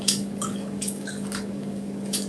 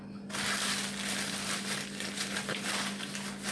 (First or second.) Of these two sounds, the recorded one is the second